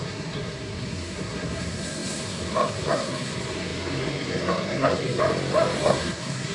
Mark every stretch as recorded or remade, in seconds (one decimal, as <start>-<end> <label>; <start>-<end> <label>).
0.0-5.2 remade; 5.2-5.8 recorded; 5.8-6.5 remade